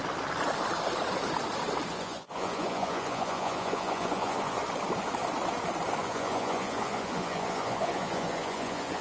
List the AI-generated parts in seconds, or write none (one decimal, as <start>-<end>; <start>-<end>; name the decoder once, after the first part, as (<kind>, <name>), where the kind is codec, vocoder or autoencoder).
1.9-4.6 (vocoder, Vocos); 6.0-9.0

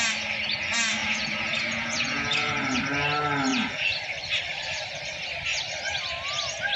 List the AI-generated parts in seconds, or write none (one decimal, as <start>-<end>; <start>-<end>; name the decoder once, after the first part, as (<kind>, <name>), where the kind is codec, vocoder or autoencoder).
1.0-2.8 (vocoder, Vocos); 3.5-4.0

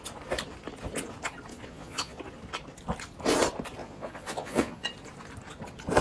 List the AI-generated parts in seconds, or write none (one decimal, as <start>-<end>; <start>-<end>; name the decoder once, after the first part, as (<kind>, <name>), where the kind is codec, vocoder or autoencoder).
1.5-2.2 (vocoder, Vocos); 3.8-4.9

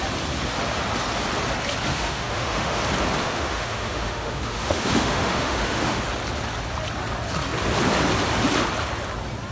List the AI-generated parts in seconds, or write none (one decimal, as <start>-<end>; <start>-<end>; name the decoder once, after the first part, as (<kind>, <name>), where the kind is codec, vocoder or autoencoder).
1.9-2.8 (autoencoder, DAC-VAE); 3.2-6.0

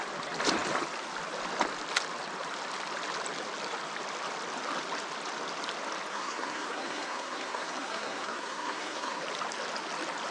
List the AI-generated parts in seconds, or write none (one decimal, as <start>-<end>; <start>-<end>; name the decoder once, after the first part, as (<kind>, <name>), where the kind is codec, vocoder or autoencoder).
6.1-9.2 (codec, SNAC)